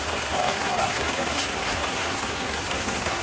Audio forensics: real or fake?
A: fake